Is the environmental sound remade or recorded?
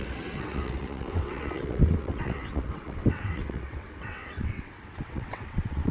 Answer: remade